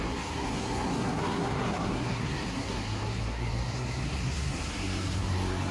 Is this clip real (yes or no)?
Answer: no